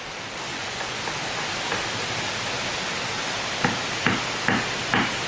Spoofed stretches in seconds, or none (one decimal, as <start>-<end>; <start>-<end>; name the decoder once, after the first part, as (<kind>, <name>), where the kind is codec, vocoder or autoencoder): 0.5-1.0 (vocoder, Vocos)